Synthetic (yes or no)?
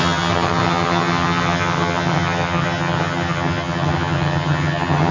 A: yes